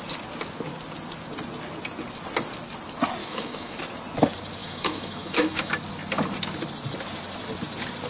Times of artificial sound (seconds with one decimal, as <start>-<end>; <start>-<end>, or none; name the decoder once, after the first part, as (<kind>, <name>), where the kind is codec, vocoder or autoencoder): 3.2-3.8 (autoencoder, DAC-VAE); 4.6-5.7